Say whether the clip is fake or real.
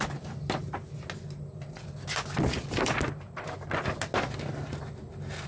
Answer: real